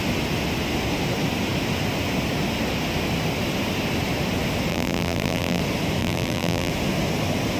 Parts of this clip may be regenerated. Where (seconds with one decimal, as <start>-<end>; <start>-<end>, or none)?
4.7-5.6; 6.0-6.7